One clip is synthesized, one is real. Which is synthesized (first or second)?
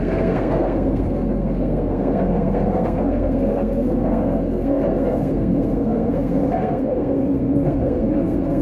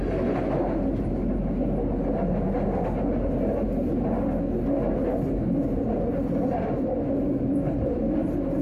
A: first